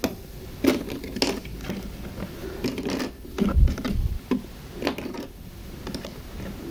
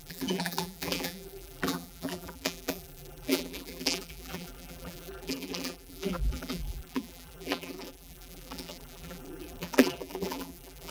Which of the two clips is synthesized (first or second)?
second